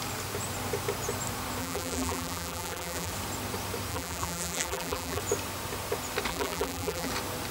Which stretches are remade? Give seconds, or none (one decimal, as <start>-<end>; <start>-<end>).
1.6-3.1; 3.9-5.2; 6.3-7.1